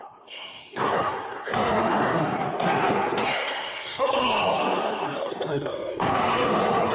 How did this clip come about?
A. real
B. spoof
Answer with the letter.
B